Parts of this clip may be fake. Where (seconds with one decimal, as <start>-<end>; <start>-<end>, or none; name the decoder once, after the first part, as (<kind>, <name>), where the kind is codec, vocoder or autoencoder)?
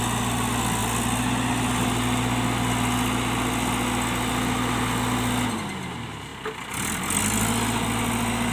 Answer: none